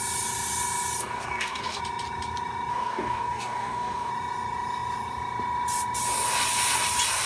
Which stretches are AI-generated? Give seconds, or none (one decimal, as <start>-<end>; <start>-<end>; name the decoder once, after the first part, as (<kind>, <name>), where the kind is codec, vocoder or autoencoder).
1.0-1.8 (codec, DAC); 2.7-4.1